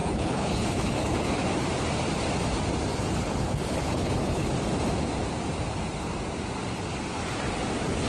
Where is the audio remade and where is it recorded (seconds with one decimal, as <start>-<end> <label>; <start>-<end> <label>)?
0.0-1.3 remade; 1.3-2.9 recorded; 2.9-4.5 remade; 4.5-8.1 recorded